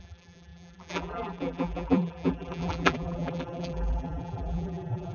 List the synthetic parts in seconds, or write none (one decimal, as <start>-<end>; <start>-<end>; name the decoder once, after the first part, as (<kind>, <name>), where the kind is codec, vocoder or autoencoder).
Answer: 0.0-5.1 (vocoder, BigVGAN v2)